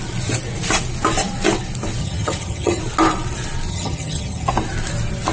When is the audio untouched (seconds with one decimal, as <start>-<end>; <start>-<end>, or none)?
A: 0.0-2.0; 2.8-3.7; 4.5-5.3